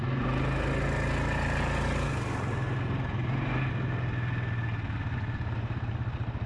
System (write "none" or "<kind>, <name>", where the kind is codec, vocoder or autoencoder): none